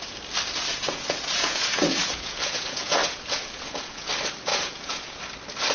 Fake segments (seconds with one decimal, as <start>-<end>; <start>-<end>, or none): 0.7-4.1; 4.5-5.2